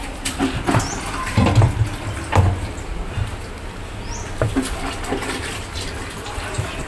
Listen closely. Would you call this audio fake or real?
real